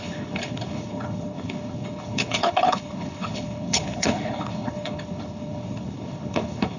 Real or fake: fake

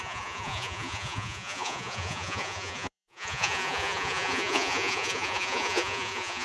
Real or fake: fake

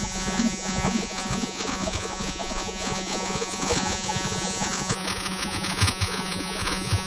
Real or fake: fake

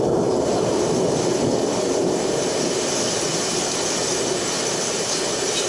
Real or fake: fake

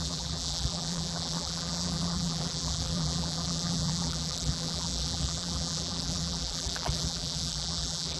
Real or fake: fake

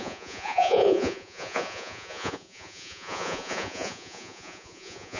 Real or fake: fake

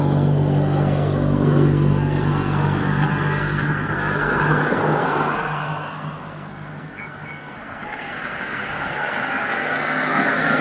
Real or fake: fake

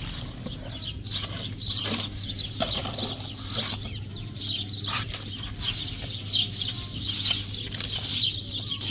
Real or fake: real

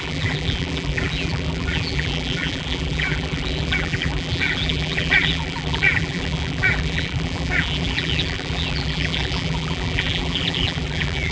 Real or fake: fake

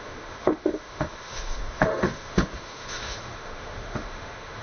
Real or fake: fake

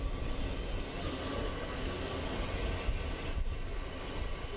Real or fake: real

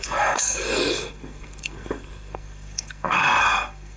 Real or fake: fake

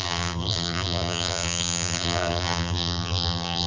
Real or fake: fake